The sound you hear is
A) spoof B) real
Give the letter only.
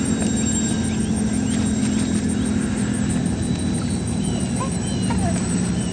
B